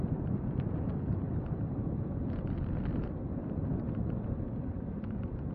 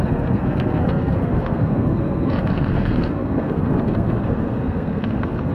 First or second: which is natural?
first